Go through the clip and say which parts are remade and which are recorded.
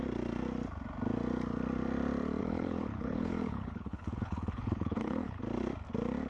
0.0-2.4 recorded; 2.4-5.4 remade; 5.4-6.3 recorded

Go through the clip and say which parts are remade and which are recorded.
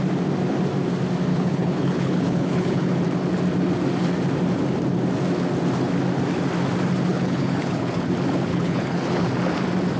0.0-1.3 recorded; 1.3-2.9 remade; 2.9-7.1 recorded; 7.1-8.1 remade; 8.1-8.5 recorded; 8.5-9.3 remade; 9.3-10.0 recorded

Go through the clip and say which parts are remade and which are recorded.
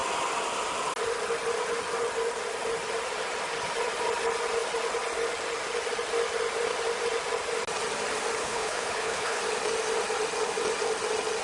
0.0-8.4 recorded; 8.4-9.4 remade; 9.4-11.4 recorded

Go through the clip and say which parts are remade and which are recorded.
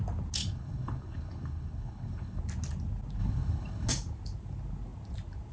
0.0-0.4 recorded; 0.4-2.4 remade; 2.4-3.2 recorded; 3.2-3.9 remade; 3.9-5.5 recorded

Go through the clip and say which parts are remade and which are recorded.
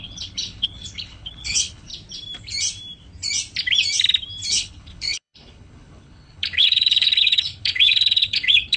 0.0-1.9 remade; 1.9-4.5 recorded; 4.5-8.8 remade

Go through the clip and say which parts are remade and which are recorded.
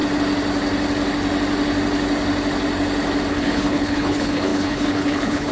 0.0-3.3 recorded; 3.3-5.5 remade